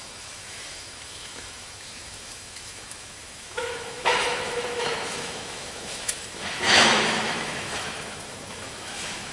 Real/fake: fake